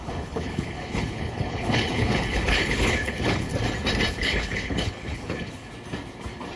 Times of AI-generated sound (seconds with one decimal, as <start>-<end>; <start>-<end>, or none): 0.0-3.5; 4.1-5.7